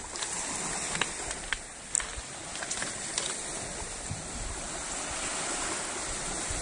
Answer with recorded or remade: recorded